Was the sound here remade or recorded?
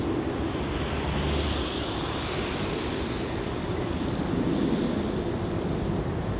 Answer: recorded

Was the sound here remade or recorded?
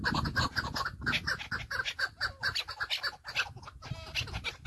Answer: recorded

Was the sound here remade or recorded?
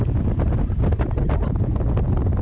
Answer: recorded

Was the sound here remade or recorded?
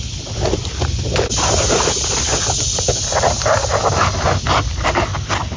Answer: recorded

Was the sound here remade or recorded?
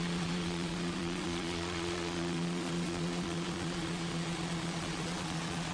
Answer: remade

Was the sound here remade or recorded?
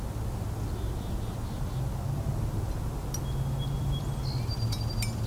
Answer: recorded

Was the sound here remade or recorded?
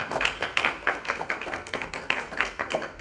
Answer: remade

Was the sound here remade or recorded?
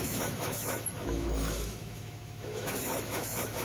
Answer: remade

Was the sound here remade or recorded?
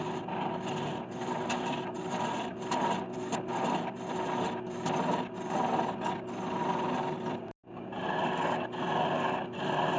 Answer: recorded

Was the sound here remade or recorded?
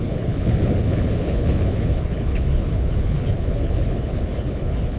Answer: remade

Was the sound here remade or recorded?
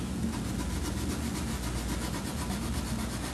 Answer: recorded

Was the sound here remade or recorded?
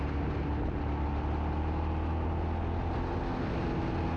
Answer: recorded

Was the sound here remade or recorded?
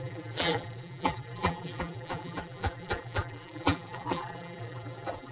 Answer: remade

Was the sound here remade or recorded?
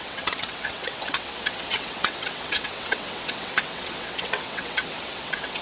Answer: remade